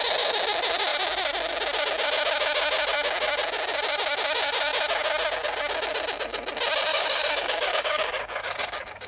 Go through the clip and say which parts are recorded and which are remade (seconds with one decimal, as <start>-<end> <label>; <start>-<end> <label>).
0.0-6.9 recorded; 6.9-9.1 remade